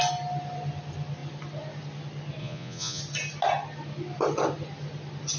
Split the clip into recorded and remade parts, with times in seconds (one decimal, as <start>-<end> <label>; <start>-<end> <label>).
0.0-2.4 recorded; 2.4-3.0 remade; 3.0-5.4 recorded

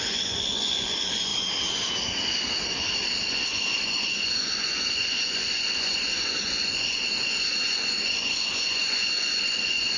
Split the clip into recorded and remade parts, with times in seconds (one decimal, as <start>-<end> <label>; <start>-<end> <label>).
0.0-1.3 remade; 1.3-3.3 recorded; 3.3-10.0 remade

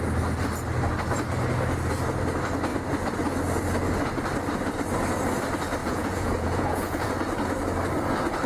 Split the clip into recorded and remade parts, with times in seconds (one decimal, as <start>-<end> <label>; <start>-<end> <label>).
0.0-5.8 recorded; 5.8-7.1 remade; 7.1-8.5 recorded

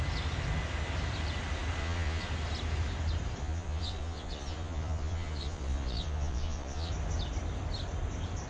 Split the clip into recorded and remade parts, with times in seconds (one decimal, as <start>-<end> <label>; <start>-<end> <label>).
0.0-1.8 recorded; 1.8-2.3 remade; 2.3-3.4 recorded; 3.4-6.9 remade; 6.9-8.5 recorded

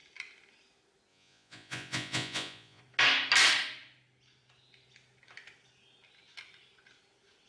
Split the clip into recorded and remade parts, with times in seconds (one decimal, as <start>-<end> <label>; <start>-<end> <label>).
0.0-1.1 recorded; 1.1-2.8 remade; 2.8-7.5 recorded

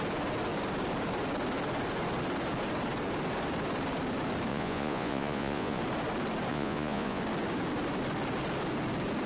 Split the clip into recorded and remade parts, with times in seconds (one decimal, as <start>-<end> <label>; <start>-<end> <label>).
0.0-4.5 recorded; 4.5-5.8 remade; 5.8-6.5 recorded; 6.5-7.2 remade; 7.2-9.3 recorded

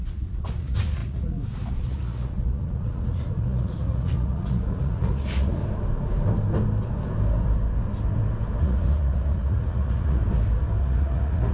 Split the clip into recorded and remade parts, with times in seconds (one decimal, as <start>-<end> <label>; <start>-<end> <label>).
0.0-5.6 remade; 5.6-8.6 recorded; 8.6-10.2 remade; 10.2-10.8 recorded; 10.8-11.5 remade